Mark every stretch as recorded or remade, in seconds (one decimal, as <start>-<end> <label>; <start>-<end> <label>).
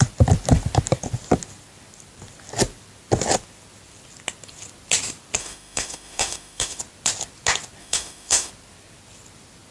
0.0-5.4 recorded; 5.4-6.8 remade; 6.8-7.8 recorded; 7.8-8.5 remade; 8.5-9.7 recorded